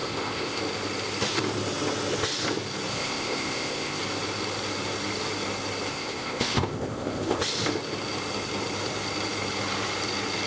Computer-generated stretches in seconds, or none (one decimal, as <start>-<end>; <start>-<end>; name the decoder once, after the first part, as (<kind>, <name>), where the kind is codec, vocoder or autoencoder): 0.0-0.6 (codec, ZipCodec); 2.9-4.0; 5.9-7.4